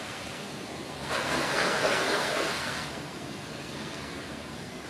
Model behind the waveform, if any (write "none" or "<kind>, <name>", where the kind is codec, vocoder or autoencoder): codec, SNAC